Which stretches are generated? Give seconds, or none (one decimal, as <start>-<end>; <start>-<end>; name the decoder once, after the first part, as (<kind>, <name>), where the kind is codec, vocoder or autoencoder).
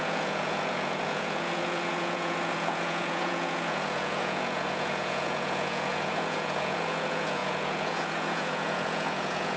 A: 0.0-9.6 (vocoder, Vocos)